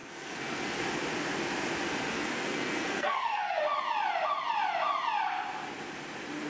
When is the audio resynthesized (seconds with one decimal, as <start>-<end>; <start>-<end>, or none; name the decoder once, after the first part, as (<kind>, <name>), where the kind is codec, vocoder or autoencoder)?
0.0-0.8 (codec, SNAC); 2.1-3.6